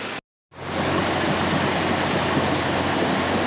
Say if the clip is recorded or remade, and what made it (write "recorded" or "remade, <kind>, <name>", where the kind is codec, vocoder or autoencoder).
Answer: recorded